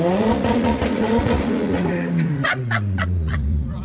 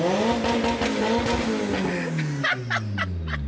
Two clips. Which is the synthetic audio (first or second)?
first